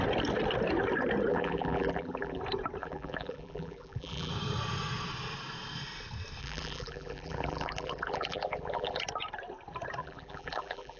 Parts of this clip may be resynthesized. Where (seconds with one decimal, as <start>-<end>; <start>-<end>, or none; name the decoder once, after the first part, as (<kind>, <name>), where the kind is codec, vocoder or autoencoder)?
1.3-2.4 (vocoder, BigVGAN v2); 2.8-4.3; 6.4-9.0; 10.0-11.0

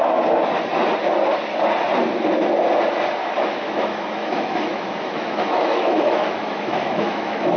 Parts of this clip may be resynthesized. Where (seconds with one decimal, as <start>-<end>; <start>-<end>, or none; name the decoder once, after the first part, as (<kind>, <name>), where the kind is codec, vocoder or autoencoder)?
3.2-7.6 (autoencoder, DAC-VAE)

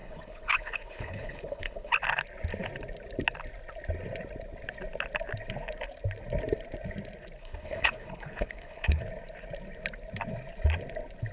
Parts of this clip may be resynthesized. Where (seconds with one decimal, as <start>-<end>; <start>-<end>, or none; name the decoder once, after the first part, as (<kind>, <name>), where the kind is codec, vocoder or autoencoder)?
0.0-1.9 (codec, HILCodec); 7.4-9.0

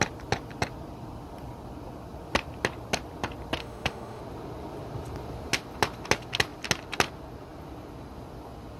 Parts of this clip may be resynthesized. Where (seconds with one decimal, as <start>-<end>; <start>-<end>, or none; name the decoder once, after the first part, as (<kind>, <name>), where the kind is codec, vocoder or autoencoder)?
3.6-4.2 (autoencoder, DAC-VAE)

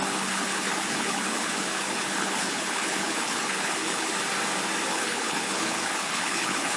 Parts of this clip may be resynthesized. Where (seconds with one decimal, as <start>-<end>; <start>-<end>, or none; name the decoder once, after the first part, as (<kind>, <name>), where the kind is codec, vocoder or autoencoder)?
0.0-4.1 (codec, HILCodec); 4.9-6.8